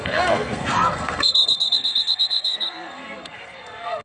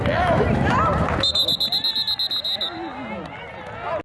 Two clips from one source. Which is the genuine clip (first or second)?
second